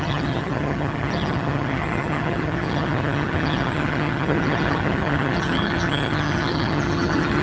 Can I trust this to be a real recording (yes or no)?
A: no